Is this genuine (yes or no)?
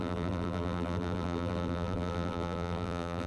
no